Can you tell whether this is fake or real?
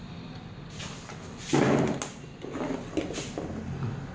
real